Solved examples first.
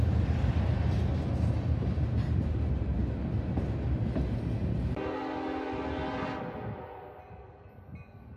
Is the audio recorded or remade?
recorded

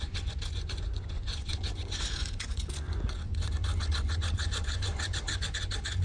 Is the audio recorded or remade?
remade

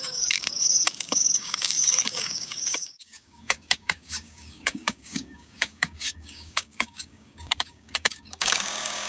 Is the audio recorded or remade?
remade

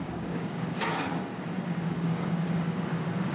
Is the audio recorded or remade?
remade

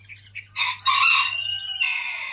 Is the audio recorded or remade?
recorded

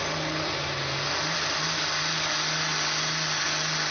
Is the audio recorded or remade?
recorded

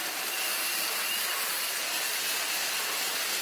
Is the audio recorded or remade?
recorded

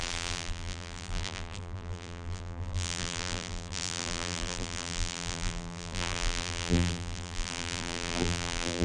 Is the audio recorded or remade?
remade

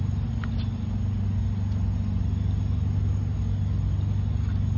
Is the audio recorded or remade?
recorded